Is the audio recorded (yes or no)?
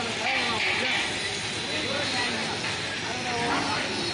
yes